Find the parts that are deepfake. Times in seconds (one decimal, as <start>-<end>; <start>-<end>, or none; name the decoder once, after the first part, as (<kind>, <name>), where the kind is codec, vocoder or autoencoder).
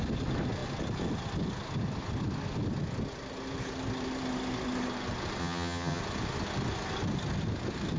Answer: 5.4-6.0 (vocoder, HiFi-GAN)